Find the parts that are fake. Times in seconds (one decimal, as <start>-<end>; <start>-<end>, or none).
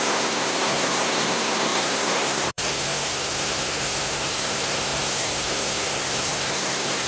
0.0-7.1